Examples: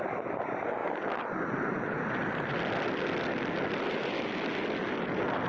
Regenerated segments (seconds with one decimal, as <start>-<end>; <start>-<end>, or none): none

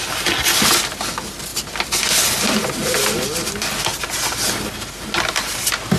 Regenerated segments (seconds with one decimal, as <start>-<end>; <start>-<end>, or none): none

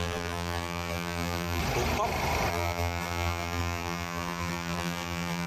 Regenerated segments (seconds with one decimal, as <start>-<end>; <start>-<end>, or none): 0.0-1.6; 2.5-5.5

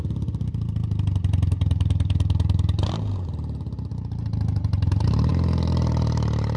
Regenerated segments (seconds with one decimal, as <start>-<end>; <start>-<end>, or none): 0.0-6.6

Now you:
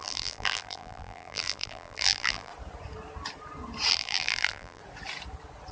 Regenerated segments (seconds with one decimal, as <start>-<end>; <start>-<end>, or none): 0.0-2.5; 3.9-4.8